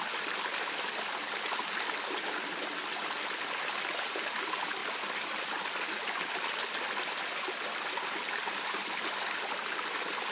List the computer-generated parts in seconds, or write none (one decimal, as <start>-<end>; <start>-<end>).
none